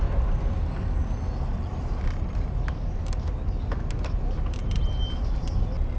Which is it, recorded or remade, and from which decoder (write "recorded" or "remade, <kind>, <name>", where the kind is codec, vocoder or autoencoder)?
recorded